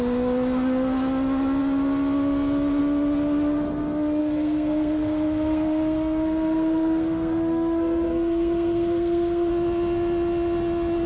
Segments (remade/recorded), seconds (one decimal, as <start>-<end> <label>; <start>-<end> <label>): 0.0-4.2 recorded; 4.2-9.5 remade; 9.5-11.1 recorded